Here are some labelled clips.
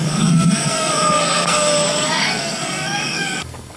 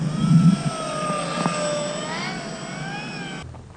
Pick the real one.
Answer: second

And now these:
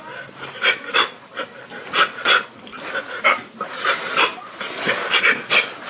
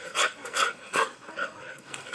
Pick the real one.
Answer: first